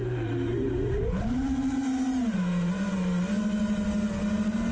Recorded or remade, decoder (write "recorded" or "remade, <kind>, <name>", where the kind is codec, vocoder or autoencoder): recorded